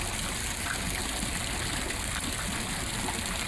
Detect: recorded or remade recorded